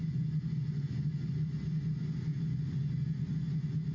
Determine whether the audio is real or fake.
real